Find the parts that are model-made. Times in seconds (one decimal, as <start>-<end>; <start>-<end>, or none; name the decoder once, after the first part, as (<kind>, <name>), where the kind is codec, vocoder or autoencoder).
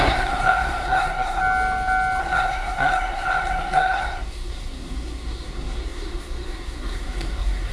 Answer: 0.0-1.4 (codec, SNAC); 2.2-7.7